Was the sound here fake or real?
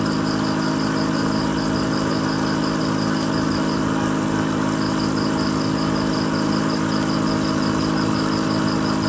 real